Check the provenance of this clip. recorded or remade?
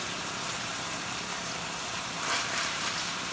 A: remade